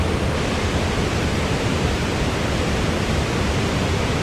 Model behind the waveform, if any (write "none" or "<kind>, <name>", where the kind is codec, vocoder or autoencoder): none